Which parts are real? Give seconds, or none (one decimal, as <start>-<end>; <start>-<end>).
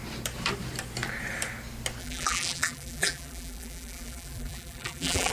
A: 0.0-2.0